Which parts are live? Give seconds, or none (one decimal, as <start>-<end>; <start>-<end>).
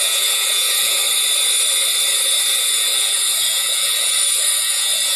1.0-2.6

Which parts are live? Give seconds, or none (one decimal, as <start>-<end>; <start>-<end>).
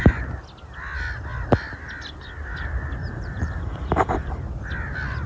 0.0-3.0; 4.4-5.3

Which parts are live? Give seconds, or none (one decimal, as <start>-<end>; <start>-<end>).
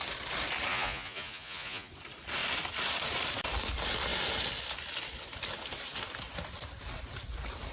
0.0-0.7; 1.9-7.7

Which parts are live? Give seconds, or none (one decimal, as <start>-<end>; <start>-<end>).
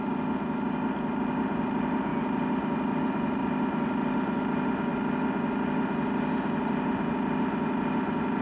0.0-8.4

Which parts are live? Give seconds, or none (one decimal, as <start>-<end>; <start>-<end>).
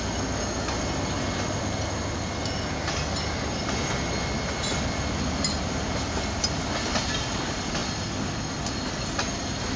0.0-9.8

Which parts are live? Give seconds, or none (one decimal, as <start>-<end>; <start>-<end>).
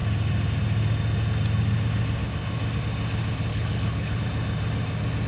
0.0-3.5; 4.2-5.3